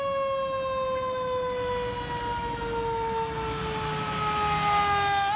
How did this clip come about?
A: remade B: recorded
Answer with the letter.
B